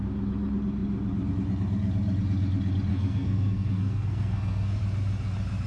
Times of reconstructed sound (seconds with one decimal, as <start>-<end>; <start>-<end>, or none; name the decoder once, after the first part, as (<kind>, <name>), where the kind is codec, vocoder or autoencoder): 2.9-4.8 (codec, SNAC)